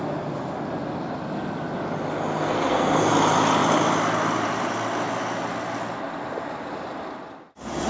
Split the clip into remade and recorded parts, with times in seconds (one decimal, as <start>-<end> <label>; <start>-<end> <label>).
0.0-2.3 recorded; 2.3-3.1 remade; 3.1-7.9 recorded